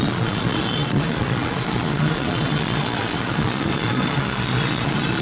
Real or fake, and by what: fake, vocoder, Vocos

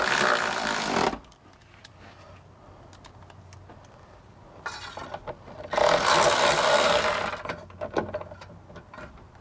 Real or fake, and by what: real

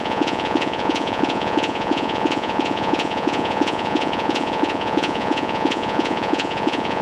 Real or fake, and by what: fake, vocoder, Vocos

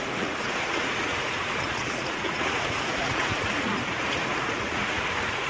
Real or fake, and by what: fake, vocoder, Vocos